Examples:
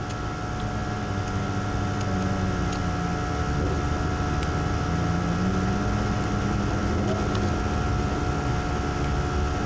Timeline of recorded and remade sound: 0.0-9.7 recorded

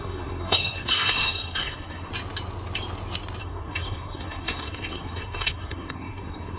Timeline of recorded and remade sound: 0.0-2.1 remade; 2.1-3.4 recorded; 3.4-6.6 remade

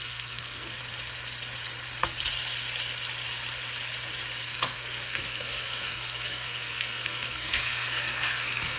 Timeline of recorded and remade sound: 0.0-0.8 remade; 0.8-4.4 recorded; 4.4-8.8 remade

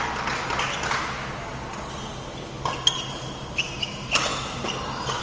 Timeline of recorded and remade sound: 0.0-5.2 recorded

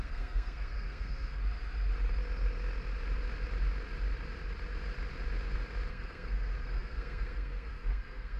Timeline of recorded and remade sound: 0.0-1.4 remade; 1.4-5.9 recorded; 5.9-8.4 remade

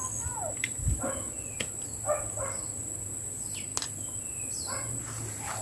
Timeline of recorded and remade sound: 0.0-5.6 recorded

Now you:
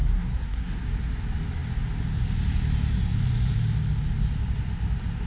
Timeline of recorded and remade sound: 0.0-0.8 remade; 0.8-5.3 recorded

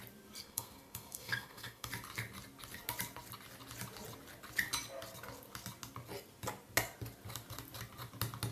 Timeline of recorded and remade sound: 0.0-0.4 recorded; 0.4-1.9 remade; 1.9-8.5 recorded